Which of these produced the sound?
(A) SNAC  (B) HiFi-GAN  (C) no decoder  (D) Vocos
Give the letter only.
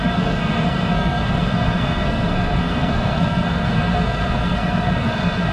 A